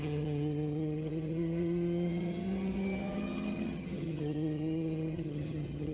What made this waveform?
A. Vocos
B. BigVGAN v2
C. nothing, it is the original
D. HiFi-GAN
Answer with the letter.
D